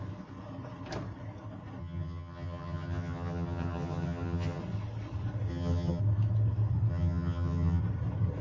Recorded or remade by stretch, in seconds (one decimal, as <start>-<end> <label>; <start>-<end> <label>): 0.0-1.8 recorded; 1.8-4.6 remade; 4.6-5.5 recorded; 5.5-6.0 remade; 6.0-6.9 recorded; 6.9-7.8 remade; 7.8-8.4 recorded